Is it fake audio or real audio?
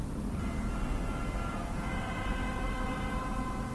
real